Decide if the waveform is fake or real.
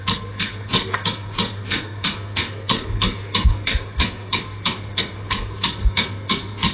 fake